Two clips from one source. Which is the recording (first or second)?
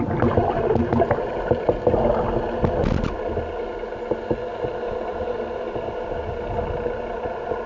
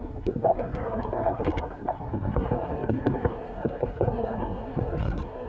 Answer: first